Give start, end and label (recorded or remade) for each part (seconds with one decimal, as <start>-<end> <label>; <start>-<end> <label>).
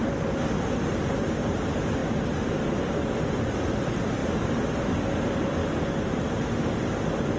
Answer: 0.0-5.6 recorded; 5.6-6.5 remade; 6.5-7.4 recorded